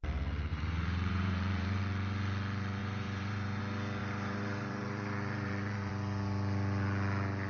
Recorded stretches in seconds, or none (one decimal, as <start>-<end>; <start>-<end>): 0.0-0.5; 1.8-2.8; 3.6-4.0; 5.9-7.5